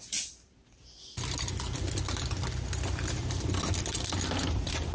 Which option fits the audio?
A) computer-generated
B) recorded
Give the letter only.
B